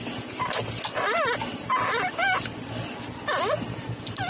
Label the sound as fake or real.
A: real